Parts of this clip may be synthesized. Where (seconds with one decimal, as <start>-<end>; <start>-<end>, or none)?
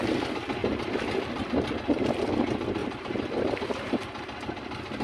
2.8-4.0